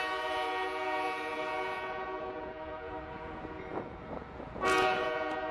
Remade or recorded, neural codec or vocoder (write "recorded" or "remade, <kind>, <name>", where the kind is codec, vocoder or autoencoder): remade, vocoder, Vocos